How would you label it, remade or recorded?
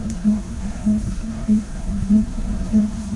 remade